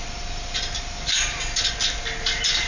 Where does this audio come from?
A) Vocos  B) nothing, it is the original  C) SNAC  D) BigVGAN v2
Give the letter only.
B